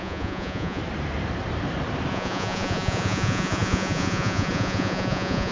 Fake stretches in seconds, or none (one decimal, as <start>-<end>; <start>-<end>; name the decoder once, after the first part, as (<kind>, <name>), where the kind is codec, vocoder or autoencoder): 0.0-0.8 (vocoder, Vocos); 2.1-5.5